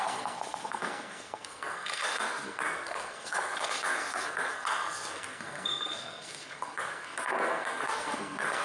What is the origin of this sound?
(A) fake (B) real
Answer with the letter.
A